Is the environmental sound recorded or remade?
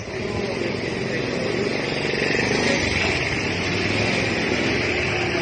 recorded